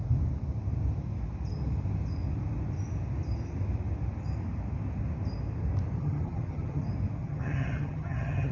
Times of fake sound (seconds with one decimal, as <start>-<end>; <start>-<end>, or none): 6.0-6.8; 7.2-8.5

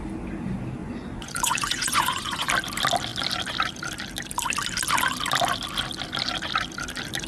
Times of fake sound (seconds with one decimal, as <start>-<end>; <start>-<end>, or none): 0.8-2.5

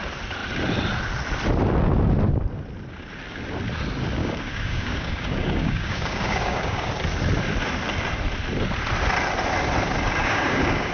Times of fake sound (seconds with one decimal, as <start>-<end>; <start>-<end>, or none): 4.2-6.9; 10.2-10.9

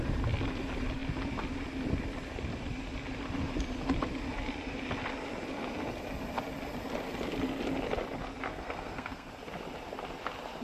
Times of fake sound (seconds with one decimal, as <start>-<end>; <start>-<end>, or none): 8.5-9.3